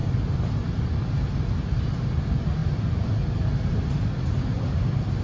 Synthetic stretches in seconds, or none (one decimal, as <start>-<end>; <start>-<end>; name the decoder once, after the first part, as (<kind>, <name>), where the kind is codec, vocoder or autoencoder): none